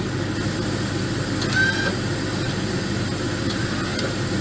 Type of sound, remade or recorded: recorded